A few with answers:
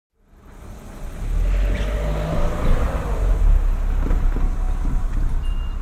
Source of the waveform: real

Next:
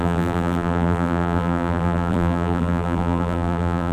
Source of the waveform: fake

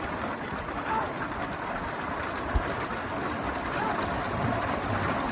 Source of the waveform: fake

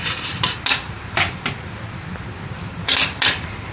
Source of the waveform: real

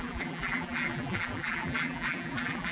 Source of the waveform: fake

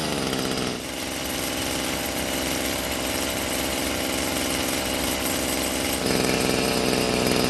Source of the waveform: real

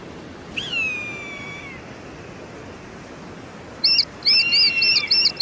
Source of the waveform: real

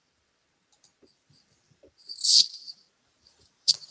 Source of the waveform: fake